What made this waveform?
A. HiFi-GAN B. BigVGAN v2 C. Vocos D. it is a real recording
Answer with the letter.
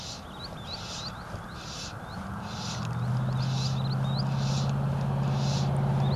D